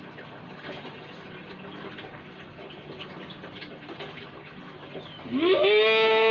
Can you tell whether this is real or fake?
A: real